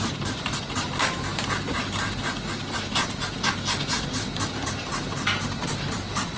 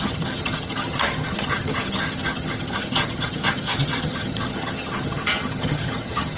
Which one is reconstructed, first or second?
second